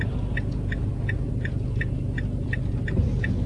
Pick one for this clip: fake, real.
real